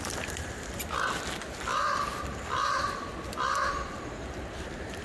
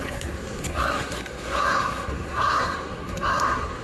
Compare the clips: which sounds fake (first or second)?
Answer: second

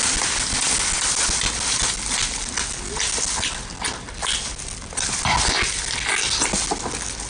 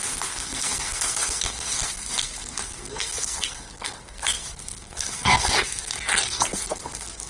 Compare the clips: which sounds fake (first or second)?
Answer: second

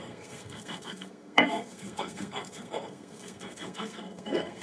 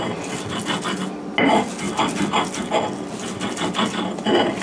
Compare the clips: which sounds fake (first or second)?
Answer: first